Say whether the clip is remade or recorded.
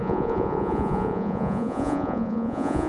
remade